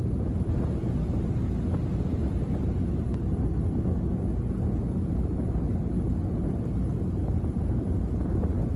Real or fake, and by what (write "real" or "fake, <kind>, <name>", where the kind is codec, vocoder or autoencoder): real